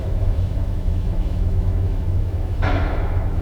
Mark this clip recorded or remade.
remade